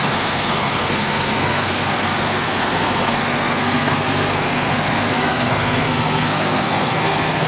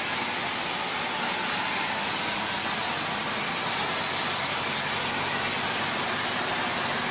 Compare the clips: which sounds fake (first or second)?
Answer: first